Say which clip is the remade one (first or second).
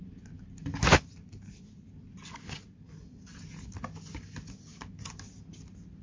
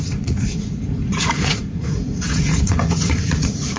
second